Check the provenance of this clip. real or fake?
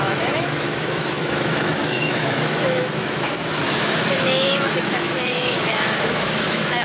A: fake